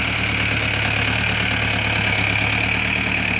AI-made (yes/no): no